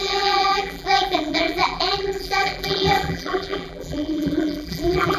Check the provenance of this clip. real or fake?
fake